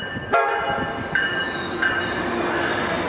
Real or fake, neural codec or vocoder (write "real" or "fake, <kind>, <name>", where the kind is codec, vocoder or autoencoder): real